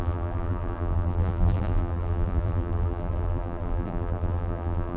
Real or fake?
fake